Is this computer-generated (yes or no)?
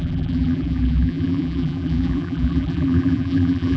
yes